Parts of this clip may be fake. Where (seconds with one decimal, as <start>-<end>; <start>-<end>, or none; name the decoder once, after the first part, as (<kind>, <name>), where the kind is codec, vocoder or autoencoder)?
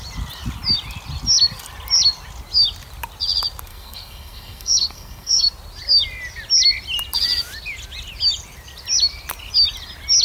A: 3.7-5.5 (codec, SNAC)